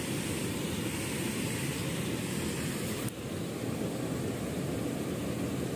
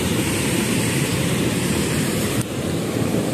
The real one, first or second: first